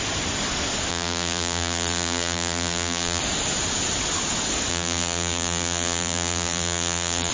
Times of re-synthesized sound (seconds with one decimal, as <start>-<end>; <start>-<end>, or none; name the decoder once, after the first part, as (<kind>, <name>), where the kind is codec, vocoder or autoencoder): 0.9-3.2 (vocoder, BigVGAN v2); 4.7-7.3